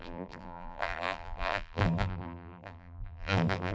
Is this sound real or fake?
fake